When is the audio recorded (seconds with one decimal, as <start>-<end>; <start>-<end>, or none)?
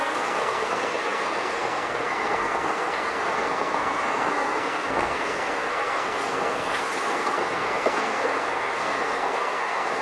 none